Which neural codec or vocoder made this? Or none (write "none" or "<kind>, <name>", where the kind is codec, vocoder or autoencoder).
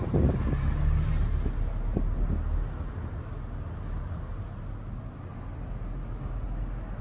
none